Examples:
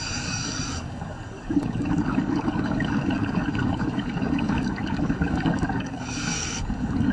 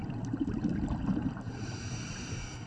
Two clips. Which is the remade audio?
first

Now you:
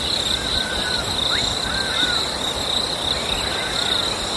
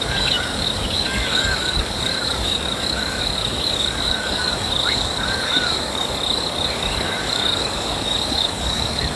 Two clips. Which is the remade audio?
second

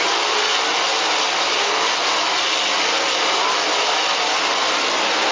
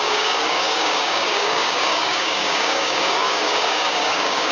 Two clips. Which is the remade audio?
second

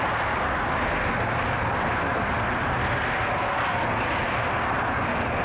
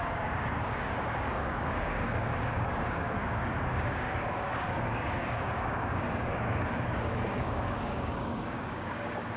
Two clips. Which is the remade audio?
second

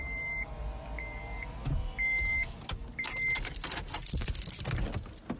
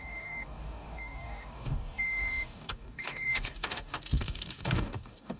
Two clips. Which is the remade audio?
second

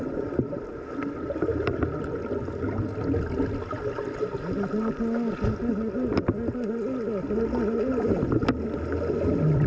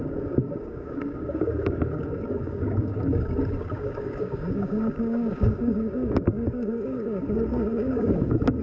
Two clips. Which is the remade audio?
second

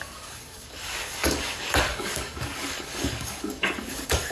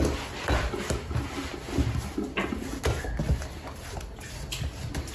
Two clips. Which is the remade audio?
first